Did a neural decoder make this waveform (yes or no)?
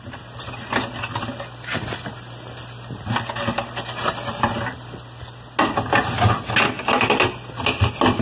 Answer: no